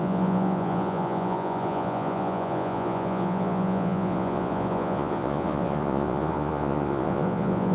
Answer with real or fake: fake